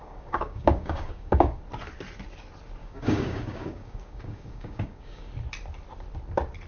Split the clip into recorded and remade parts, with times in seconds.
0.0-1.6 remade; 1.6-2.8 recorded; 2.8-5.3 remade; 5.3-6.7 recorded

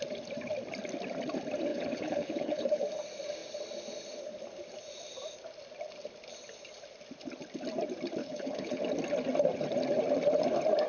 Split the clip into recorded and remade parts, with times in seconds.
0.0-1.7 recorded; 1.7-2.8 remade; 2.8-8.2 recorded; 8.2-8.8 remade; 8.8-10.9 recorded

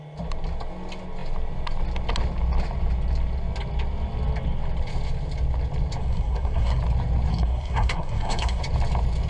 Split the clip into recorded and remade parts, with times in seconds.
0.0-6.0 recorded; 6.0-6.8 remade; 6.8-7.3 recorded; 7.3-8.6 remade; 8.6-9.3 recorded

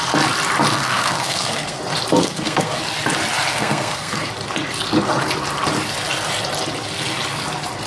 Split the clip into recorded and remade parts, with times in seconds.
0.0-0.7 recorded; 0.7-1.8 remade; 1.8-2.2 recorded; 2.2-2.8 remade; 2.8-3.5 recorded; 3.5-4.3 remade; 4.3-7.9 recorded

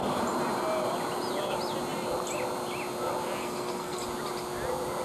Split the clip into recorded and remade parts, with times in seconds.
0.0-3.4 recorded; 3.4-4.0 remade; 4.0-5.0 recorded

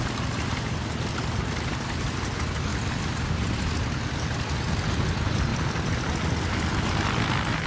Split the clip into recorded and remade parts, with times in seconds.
0.0-7.7 recorded

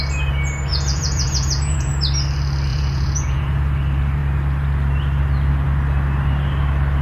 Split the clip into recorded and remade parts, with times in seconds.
0.0-0.7 recorded; 0.7-1.9 remade; 1.9-2.7 recorded; 2.7-3.7 remade; 3.7-7.0 recorded

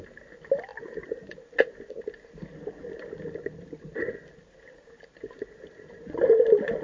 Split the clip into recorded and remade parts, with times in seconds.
0.0-6.8 recorded